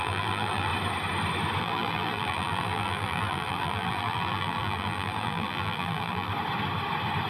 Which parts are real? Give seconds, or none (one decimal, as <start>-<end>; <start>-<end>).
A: 0.7-1.6; 6.3-7.3